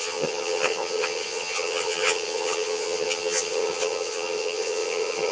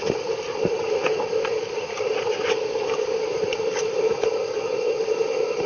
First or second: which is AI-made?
first